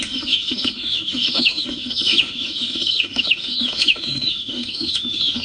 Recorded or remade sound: remade